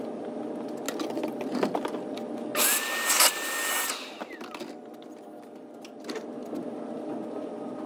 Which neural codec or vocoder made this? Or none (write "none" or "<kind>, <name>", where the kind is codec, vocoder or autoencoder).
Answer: none